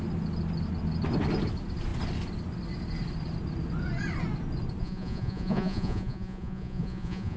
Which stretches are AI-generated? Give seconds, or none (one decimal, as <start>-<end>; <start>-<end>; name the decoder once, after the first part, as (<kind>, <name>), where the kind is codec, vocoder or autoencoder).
4.8-7.4 (vocoder, Vocos)